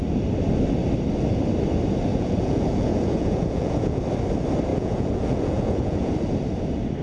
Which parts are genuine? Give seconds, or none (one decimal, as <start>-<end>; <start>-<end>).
0.0-2.1; 4.0-4.7; 6.1-7.0